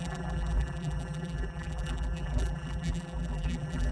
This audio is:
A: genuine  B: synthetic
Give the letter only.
B